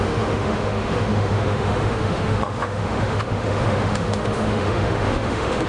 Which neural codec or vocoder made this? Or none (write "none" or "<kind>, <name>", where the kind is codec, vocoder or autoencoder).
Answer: autoencoder, DAC-VAE